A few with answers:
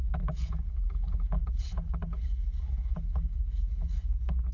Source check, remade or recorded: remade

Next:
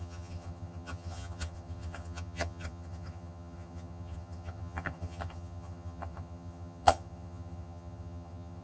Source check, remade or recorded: remade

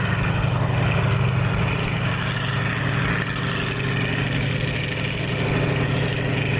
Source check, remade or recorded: recorded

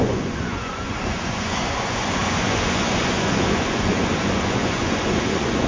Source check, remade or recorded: remade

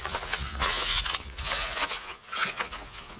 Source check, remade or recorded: remade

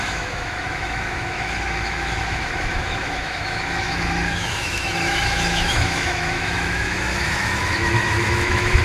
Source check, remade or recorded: remade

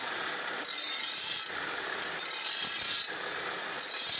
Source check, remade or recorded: recorded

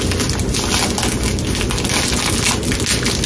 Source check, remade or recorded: recorded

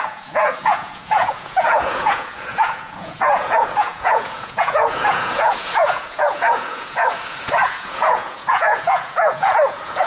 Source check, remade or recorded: remade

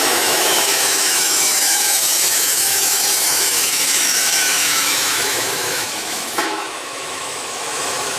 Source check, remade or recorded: remade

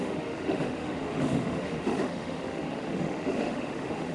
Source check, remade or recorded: remade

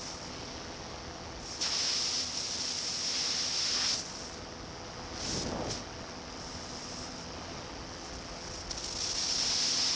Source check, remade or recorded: recorded